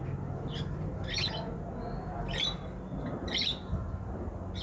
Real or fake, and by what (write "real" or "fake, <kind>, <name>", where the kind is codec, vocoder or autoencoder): real